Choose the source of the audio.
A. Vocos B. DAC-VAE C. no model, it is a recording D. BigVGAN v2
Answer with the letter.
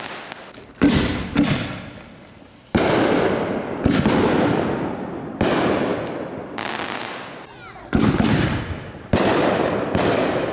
C